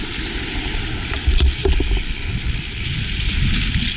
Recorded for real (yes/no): yes